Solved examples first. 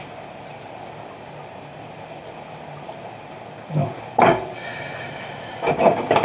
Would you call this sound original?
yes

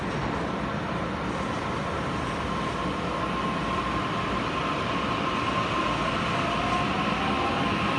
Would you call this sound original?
yes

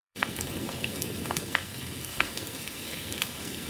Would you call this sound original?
no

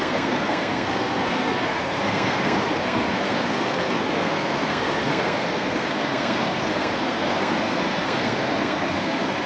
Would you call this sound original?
no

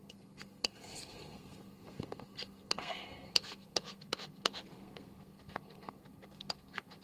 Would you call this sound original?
no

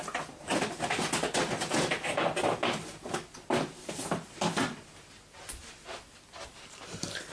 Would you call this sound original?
yes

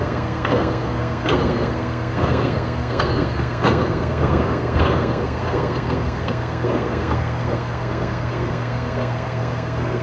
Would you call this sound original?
no